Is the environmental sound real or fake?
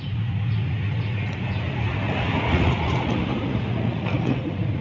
fake